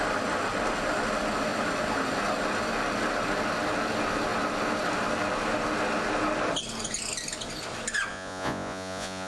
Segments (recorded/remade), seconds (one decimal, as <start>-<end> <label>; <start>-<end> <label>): 0.0-8.1 recorded; 8.1-9.3 remade